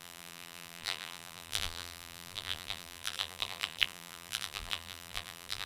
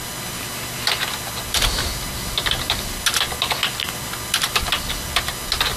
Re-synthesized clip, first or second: first